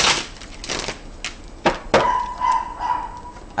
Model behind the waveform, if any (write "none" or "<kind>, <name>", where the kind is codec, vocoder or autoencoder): none